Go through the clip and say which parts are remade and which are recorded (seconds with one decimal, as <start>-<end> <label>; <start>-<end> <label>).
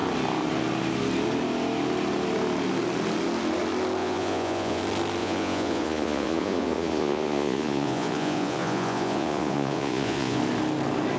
0.0-4.0 recorded; 4.0-4.8 remade; 4.8-5.2 recorded; 5.2-10.4 remade; 10.4-11.2 recorded